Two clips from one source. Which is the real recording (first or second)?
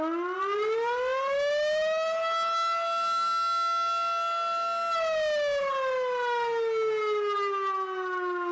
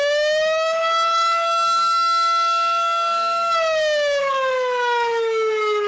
first